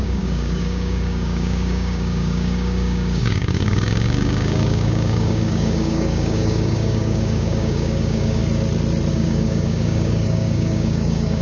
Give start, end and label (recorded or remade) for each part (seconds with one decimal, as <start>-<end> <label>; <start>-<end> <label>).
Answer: 0.0-8.4 remade; 8.4-9.1 recorded; 9.1-11.4 remade

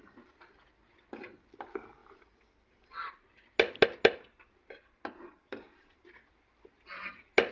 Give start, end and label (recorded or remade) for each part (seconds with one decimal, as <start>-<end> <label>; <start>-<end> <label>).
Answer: 0.0-5.4 recorded; 5.4-6.0 remade; 6.0-7.5 recorded

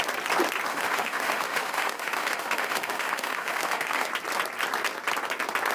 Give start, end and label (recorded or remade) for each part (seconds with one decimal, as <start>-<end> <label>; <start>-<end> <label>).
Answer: 0.0-0.7 recorded; 0.7-4.1 remade; 4.1-5.7 recorded

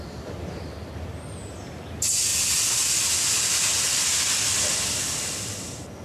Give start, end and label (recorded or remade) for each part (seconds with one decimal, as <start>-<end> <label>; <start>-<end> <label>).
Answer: 0.0-6.0 recorded

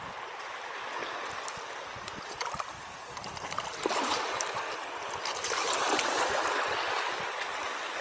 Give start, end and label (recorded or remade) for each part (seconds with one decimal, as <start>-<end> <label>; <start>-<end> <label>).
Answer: 0.0-8.0 recorded

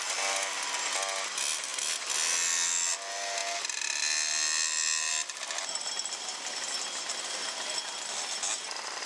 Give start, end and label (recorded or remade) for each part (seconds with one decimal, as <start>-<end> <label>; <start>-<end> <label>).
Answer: 0.0-9.1 recorded